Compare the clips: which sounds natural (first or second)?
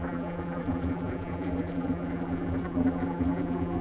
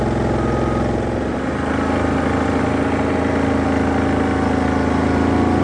second